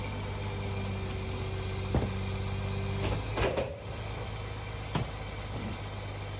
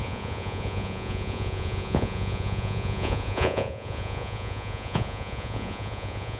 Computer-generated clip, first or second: second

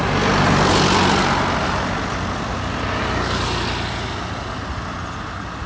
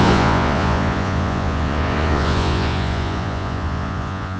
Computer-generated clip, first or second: second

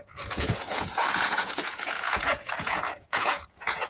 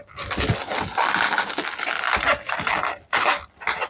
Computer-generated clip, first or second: first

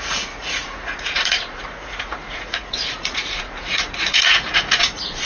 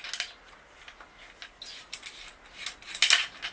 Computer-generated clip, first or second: first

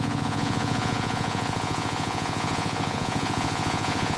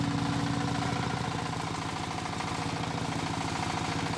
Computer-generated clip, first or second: first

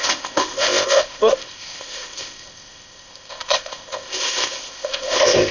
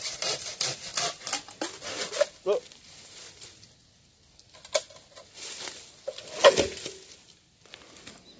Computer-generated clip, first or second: first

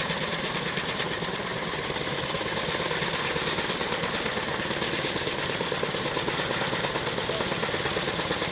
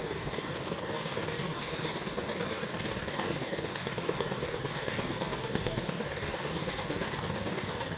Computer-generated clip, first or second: second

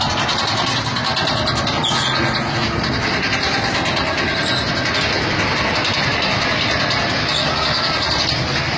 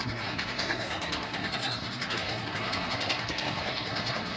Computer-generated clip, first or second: second